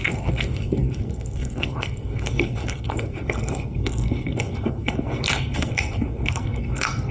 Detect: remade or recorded remade